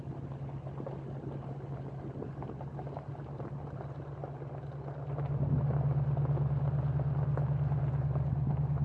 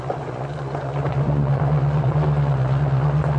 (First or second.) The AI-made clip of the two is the second